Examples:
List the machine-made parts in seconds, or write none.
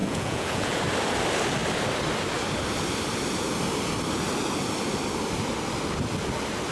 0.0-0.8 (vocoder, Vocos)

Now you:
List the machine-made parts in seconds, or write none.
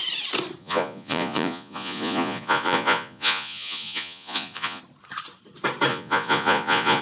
0.6-4.8 (vocoder, Vocos); 5.9-7.0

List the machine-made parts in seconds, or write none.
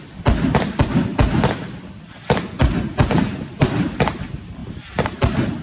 none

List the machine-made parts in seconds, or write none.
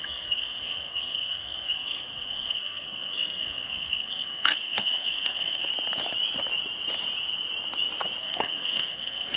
0.0-5.7 (codec, SNAC); 8.2-9.4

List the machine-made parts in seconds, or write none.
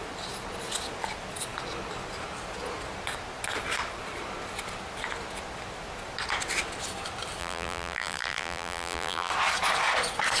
7.4-9.3 (vocoder, BigVGAN v2)